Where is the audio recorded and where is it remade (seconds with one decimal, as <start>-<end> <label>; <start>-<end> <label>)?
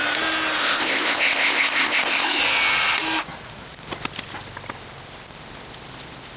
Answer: 0.0-0.6 recorded; 0.6-2.4 remade; 2.4-6.4 recorded